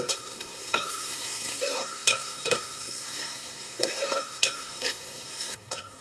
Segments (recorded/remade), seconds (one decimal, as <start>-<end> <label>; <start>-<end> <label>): 0.0-6.0 remade